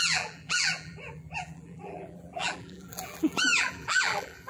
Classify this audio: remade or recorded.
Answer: remade